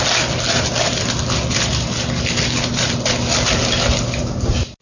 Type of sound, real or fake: real